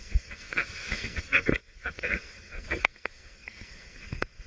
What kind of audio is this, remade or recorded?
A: remade